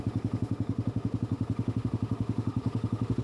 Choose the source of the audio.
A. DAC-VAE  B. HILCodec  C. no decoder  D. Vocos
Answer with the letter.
A